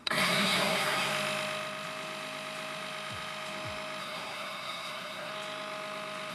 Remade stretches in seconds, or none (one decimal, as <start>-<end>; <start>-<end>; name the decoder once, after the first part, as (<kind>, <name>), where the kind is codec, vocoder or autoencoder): 0.0-1.1 (codec, SNAC); 4.0-5.3